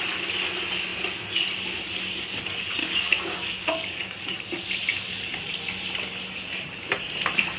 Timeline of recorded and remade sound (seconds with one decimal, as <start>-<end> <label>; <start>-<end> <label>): 0.0-2.8 recorded; 2.8-4.3 remade; 4.3-7.6 recorded